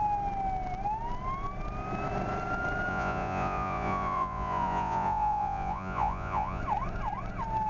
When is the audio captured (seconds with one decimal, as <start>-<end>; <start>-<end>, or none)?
0.0-2.9; 6.6-7.7